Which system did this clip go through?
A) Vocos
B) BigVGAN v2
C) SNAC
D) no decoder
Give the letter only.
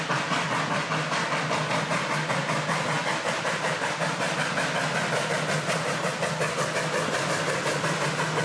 D